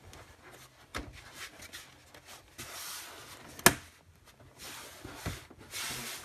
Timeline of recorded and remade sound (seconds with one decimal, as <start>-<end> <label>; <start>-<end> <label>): 0.0-0.9 recorded; 0.9-1.6 remade; 1.6-6.2 recorded